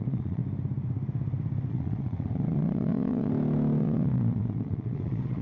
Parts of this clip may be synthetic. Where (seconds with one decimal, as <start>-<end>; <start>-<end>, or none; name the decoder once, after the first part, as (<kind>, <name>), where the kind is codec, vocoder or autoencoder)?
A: 0.0-0.4 (vocoder, Vocos); 1.7-3.3; 3.8-5.4